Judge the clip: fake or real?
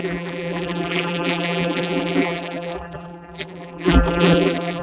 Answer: fake